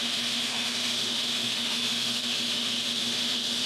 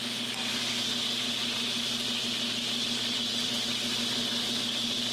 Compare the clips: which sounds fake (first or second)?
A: first